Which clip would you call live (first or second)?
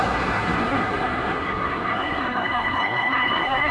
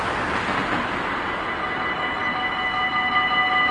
second